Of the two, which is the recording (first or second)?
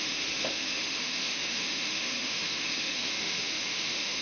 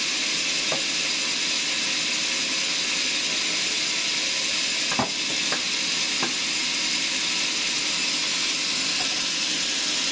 second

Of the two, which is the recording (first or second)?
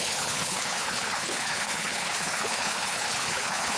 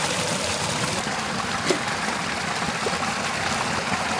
second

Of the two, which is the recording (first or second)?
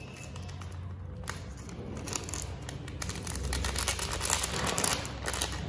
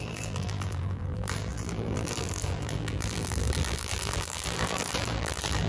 first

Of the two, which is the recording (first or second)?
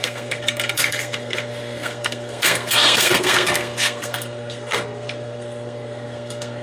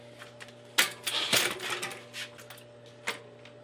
second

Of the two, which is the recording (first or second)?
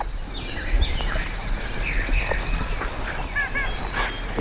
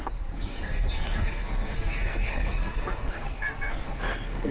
first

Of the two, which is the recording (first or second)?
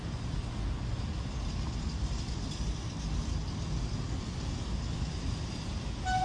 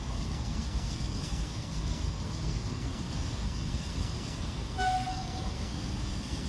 first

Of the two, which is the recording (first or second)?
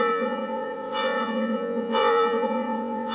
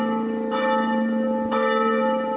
second